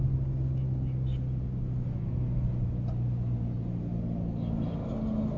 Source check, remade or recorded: recorded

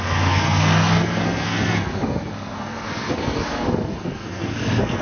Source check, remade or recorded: remade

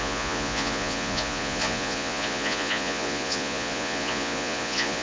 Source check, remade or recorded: remade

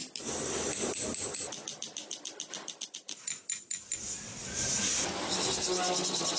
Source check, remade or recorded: recorded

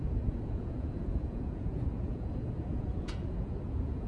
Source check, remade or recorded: remade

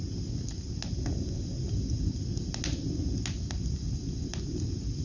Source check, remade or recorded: recorded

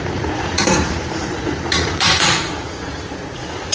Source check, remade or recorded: remade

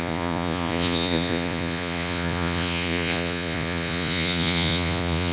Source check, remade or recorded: remade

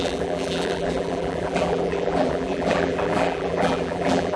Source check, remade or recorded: remade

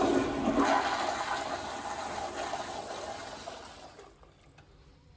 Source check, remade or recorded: recorded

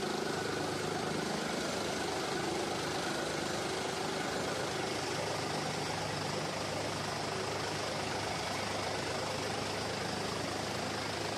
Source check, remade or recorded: recorded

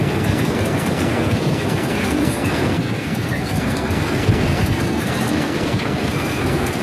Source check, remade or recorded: remade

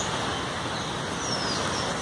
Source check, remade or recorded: recorded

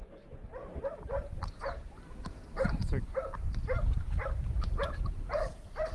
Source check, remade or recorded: remade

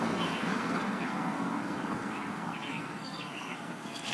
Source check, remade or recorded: remade